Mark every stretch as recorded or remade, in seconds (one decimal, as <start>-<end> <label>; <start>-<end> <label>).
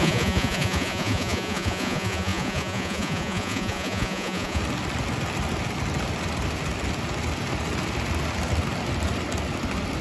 0.0-4.6 remade; 4.6-10.0 recorded